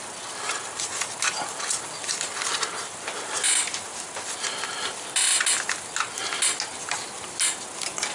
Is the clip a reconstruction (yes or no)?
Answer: no